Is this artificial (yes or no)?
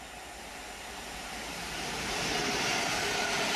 no